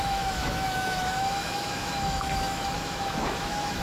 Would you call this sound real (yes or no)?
no